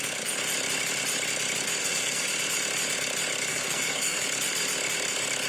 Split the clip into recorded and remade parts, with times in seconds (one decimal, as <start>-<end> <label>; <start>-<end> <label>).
0.0-1.8 recorded; 1.8-2.3 remade; 2.3-3.5 recorded; 3.5-4.2 remade; 4.2-5.5 recorded